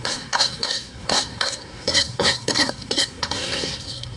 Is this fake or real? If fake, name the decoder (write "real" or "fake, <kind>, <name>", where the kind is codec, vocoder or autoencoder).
fake, codec, SNAC